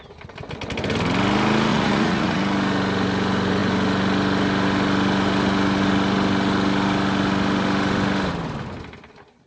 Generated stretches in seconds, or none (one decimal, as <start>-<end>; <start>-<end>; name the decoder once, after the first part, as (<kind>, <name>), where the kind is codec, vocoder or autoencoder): 1.7-2.4 (vocoder, Vocos)